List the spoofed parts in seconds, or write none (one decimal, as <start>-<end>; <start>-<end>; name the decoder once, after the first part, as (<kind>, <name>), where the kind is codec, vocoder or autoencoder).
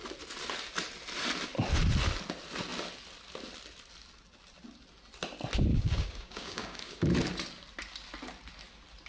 5.7-7.0 (codec, DAC)